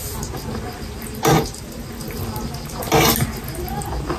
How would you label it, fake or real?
real